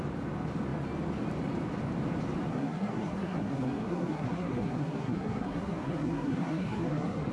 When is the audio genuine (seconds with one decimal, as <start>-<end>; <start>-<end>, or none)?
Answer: 0.0-2.5